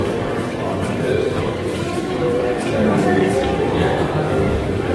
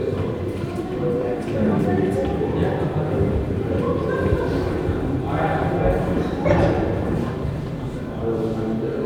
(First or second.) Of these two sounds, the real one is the second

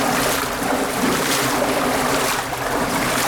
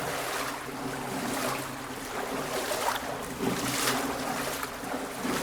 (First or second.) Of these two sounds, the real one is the second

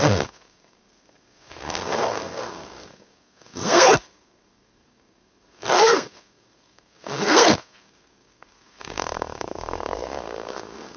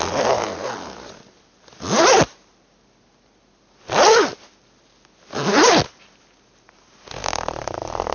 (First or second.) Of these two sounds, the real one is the second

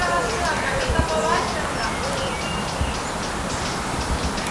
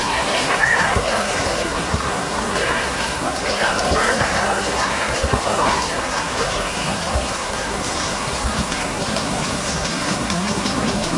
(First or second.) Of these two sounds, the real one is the first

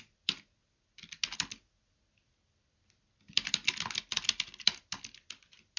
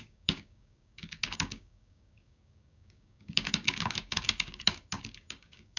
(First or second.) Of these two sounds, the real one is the first